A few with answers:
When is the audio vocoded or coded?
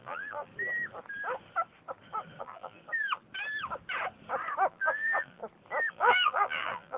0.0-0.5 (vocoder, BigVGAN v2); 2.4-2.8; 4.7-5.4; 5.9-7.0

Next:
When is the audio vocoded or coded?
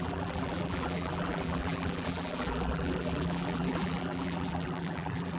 0.0-5.4 (vocoder, BigVGAN v2)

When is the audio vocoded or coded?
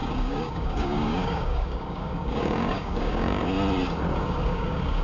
0.0-3.4 (codec, DAC); 4.2-5.0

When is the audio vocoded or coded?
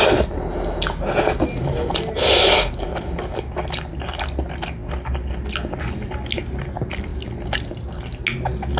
none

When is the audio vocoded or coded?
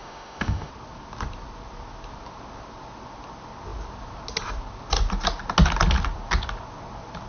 0.0-0.7 (autoencoder, DAC-VAE)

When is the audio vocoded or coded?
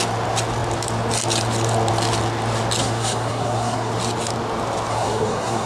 2.8-3.9 (codec, SNAC); 4.9-5.7